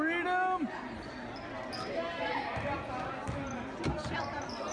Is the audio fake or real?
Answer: real